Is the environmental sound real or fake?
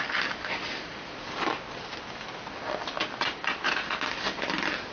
real